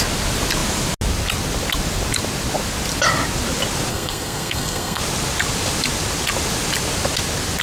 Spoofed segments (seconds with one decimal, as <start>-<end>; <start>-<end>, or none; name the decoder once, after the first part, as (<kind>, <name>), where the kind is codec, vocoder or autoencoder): 3.9-5.0 (codec, SNAC)